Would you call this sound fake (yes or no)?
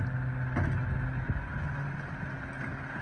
no